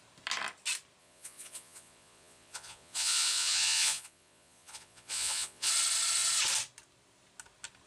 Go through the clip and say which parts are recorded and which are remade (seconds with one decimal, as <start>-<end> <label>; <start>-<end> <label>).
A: 0.0-1.0 recorded; 1.0-5.7 remade; 5.7-7.9 recorded